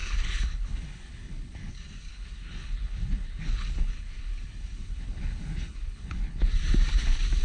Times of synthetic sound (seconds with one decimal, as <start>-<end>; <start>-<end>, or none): 0.0-1.7; 2.1-6.5